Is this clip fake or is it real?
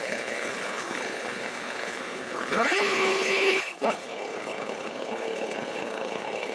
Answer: fake